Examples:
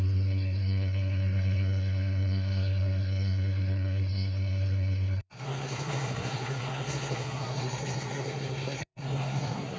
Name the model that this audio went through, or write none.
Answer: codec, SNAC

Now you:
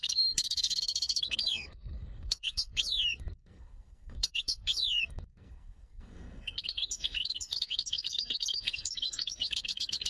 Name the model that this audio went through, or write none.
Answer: codec, SNAC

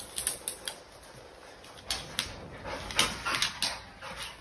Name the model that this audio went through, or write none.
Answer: none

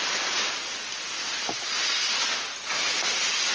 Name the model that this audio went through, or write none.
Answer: none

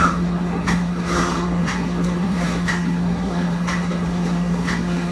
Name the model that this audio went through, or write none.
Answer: codec, SNAC